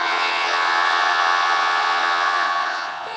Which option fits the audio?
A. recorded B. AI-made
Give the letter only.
B